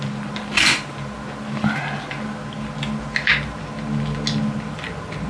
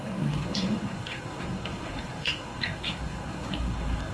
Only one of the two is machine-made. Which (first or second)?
second